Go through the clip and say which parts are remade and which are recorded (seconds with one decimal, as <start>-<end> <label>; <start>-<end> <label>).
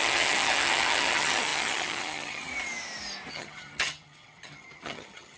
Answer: 0.0-2.5 remade; 2.5-3.3 recorded; 3.3-5.4 remade